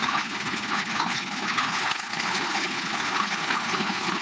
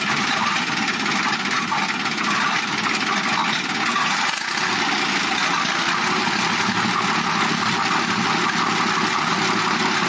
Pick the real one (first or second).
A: second